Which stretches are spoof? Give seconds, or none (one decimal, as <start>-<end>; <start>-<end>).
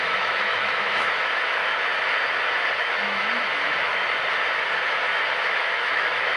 0.0-1.6; 2.8-3.9; 5.4-6.4